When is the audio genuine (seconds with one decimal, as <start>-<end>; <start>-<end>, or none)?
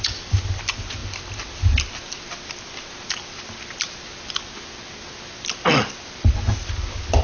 0.0-7.2